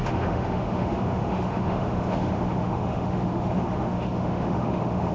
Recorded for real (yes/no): no